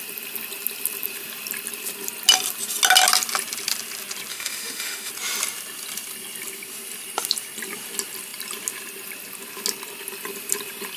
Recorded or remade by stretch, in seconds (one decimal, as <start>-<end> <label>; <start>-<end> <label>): 0.0-4.3 recorded; 4.3-5.1 remade; 5.1-11.0 recorded